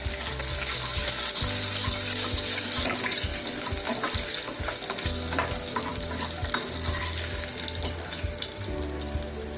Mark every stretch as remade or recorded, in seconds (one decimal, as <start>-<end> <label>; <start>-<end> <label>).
0.0-9.6 recorded